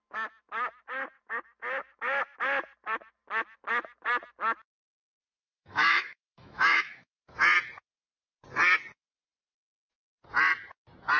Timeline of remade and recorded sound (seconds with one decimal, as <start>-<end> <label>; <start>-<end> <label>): 0.0-5.4 recorded; 5.4-7.2 remade; 7.2-11.2 recorded